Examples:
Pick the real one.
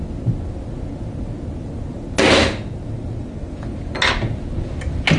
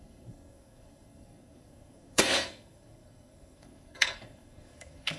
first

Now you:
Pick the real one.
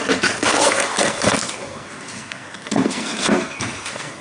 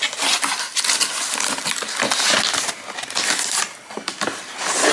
second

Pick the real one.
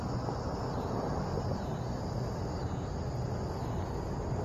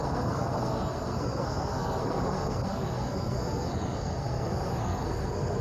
first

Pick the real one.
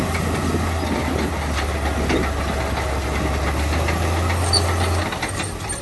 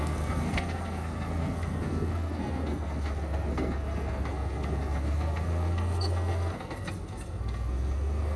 first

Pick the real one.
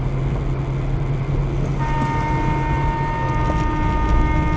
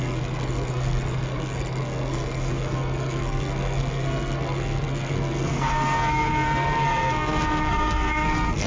first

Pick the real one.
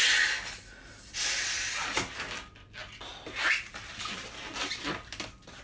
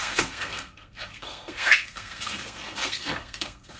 first